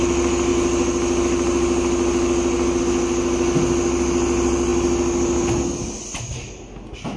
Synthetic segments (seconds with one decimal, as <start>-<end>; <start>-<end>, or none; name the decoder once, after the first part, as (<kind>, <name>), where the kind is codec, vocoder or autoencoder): none